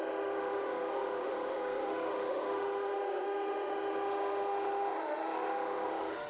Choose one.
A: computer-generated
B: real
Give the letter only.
A